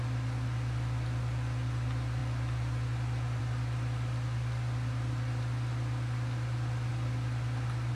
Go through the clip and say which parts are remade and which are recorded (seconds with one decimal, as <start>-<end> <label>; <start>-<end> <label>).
0.0-7.9 recorded